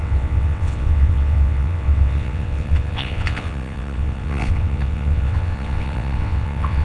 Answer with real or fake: fake